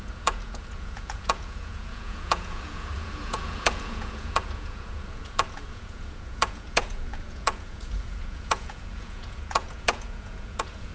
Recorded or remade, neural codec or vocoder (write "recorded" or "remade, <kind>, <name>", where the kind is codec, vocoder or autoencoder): remade, vocoder, Vocos